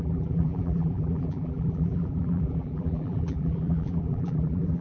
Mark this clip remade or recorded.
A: remade